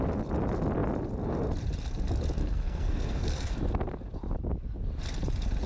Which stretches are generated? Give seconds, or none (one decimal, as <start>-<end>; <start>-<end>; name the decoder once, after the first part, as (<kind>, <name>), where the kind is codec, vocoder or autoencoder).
2.4-3.6 (codec, SNAC)

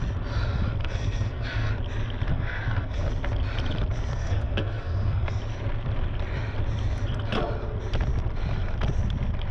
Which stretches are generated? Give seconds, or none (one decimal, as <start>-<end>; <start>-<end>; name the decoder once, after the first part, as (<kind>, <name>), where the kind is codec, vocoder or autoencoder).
0.8-1.7 (codec, SNAC); 2.3-3.1; 4.1-5.4

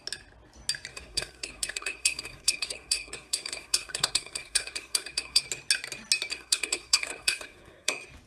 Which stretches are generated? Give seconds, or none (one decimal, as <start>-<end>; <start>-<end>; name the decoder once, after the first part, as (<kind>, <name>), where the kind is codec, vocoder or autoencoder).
0.9-5.4 (codec, SNAC); 6.3-7.9

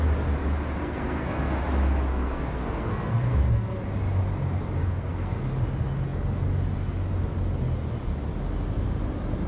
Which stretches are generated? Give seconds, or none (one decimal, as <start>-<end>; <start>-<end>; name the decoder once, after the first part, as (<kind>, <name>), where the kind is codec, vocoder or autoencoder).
0.8-1.6 (codec, SNAC); 2.1-3.8; 4.8-5.4

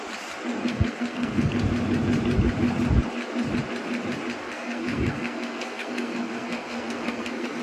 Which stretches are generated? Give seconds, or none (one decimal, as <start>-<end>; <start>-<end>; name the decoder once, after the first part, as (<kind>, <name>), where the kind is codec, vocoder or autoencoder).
0.5-1.6 (codec, SNAC); 4.4-7.6

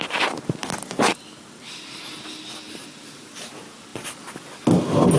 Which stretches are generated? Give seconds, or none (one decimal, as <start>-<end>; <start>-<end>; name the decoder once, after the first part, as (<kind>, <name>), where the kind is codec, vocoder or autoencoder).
none

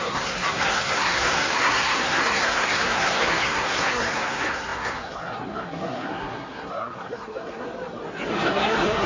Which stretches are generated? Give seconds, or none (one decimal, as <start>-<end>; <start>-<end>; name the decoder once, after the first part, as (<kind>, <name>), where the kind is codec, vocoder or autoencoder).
0.0-7.7 (codec, SNAC); 8.3-9.1